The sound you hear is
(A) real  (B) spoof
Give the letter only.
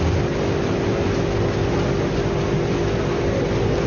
A